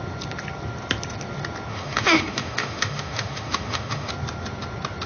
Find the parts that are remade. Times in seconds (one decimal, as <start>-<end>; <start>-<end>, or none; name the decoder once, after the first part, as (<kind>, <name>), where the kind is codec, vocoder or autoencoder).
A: 1.7-4.1 (autoencoder, DAC-VAE)